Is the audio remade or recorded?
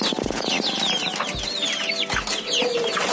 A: recorded